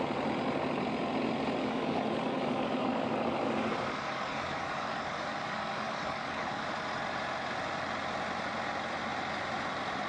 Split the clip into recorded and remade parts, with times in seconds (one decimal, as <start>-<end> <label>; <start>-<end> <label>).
0.0-1.6 recorded; 1.6-6.6 remade; 6.6-10.1 recorded